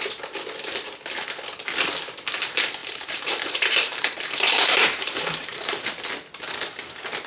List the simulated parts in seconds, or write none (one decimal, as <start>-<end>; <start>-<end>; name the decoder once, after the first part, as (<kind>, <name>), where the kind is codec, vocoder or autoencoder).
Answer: 2.8-5.9 (vocoder, BigVGAN v2)